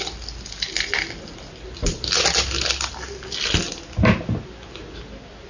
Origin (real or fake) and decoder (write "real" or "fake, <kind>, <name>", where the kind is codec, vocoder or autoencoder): real